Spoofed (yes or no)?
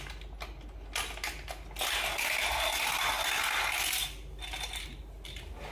no